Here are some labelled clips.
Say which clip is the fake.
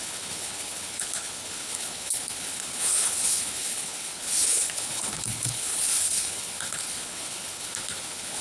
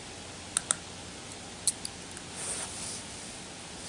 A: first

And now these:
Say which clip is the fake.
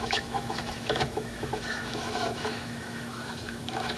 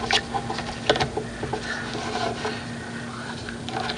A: first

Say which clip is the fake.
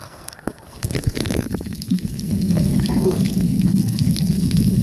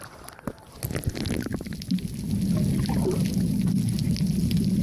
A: first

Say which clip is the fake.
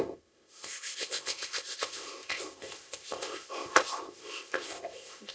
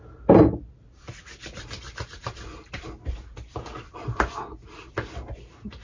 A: first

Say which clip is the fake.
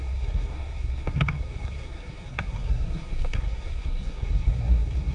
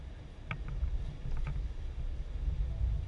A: first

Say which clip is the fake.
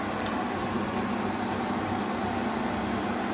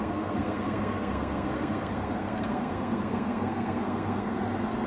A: second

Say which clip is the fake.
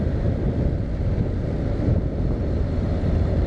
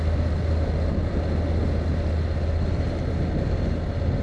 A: first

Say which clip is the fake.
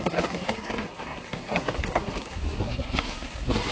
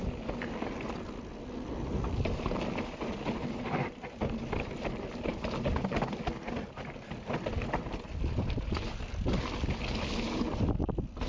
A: first